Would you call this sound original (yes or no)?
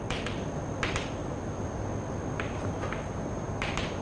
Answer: yes